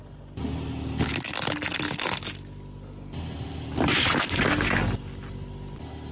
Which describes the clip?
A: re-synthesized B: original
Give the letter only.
B